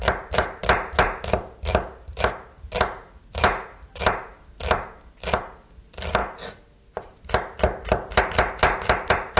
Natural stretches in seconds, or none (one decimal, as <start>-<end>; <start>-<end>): 0.0-9.4